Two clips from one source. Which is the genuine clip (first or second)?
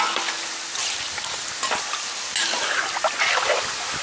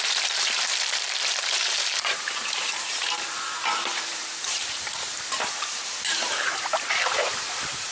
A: first